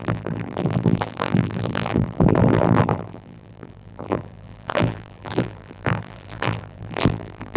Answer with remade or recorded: remade